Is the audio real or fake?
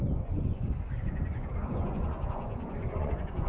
fake